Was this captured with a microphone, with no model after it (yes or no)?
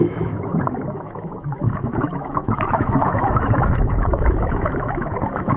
no